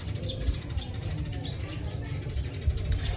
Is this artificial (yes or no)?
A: no